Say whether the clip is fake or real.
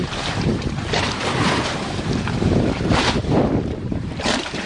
fake